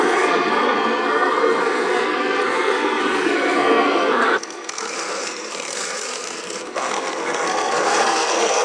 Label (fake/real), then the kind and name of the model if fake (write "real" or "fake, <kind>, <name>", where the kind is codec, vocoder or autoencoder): fake, codec, SNAC